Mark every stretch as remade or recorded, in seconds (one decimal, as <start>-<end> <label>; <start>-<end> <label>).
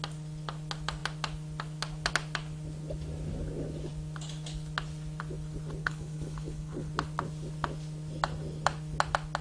0.0-5.8 recorded; 5.8-6.9 remade; 6.9-9.4 recorded